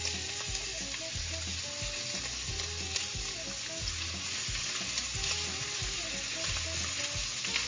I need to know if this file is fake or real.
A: real